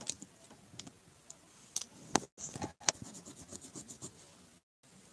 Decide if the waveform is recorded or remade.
recorded